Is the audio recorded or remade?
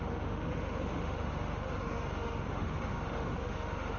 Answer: remade